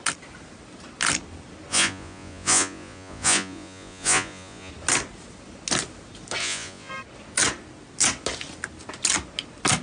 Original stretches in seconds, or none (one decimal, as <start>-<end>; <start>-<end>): 0.0-1.7; 4.7-6.4; 6.9-9.8